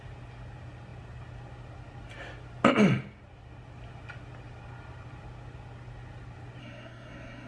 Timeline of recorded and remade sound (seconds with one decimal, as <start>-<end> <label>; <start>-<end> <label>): 0.0-6.6 recorded; 6.6-7.5 remade